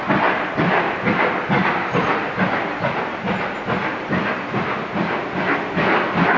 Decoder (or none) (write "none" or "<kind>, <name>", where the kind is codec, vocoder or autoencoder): none